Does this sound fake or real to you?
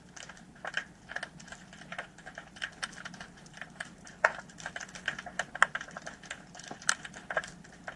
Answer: real